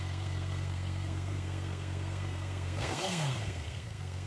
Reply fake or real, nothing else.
fake